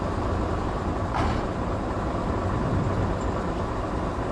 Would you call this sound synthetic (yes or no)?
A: no